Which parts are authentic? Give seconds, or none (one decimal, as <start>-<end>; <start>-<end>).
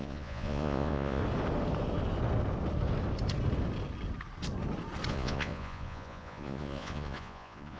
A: 1.2-5.1